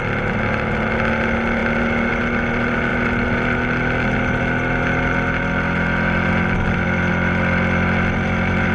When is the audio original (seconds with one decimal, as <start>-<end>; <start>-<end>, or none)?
0.0-8.7